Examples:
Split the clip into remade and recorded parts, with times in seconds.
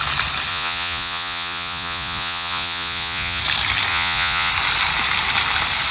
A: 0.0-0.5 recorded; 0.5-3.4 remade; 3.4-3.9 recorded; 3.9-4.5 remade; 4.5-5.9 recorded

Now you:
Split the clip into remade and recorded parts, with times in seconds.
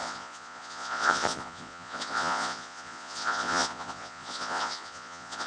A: 0.0-5.5 remade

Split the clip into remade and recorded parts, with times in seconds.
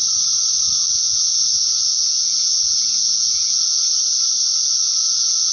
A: 0.0-0.8 recorded; 0.8-3.8 remade; 3.8-4.8 recorded; 4.8-5.5 remade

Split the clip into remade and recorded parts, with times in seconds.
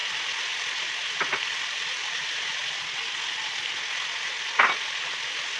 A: 0.0-5.6 recorded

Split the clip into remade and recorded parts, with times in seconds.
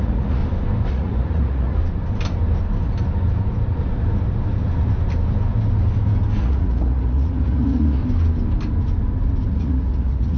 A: 0.0-0.4 remade; 0.4-0.9 recorded; 0.9-1.8 remade; 1.8-6.4 recorded; 6.4-8.0 remade; 8.0-9.5 recorded; 9.5-10.4 remade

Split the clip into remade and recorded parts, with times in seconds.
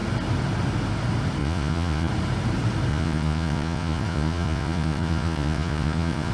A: 0.0-1.4 recorded; 1.4-2.1 remade; 2.1-2.9 recorded; 2.9-6.3 remade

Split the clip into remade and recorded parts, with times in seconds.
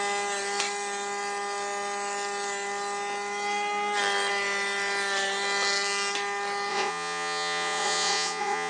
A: 0.0-6.7 recorded; 6.7-8.7 remade